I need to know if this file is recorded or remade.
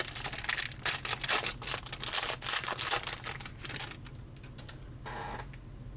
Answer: recorded